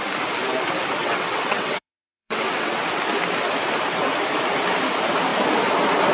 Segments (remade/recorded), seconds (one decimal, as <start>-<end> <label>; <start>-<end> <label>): 0.0-1.0 recorded; 1.0-2.8 remade; 2.8-6.1 recorded